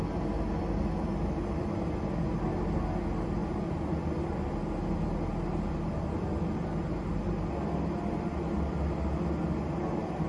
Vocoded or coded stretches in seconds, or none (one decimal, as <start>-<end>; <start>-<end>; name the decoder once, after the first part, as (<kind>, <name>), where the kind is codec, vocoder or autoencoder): none